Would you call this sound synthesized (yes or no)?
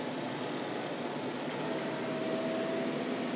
no